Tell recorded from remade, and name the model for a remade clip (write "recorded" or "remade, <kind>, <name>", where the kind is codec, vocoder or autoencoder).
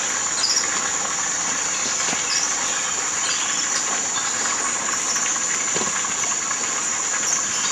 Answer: recorded